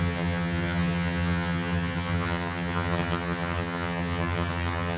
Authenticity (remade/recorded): remade